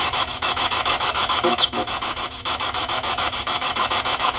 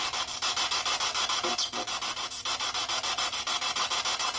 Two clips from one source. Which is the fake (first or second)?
first